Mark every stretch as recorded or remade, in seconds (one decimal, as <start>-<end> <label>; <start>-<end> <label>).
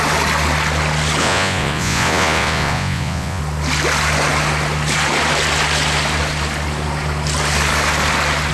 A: 0.0-1.2 recorded; 1.2-3.4 remade; 3.4-8.5 recorded